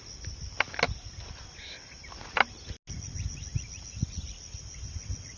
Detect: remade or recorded recorded